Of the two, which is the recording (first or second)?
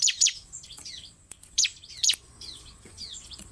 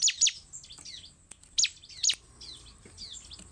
second